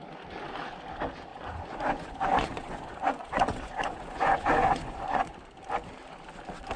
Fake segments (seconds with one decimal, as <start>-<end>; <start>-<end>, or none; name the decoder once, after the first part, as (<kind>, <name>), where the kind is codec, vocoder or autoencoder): 1.3-5.4 (vocoder, Vocos)